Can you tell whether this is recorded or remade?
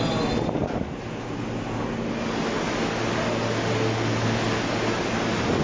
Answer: recorded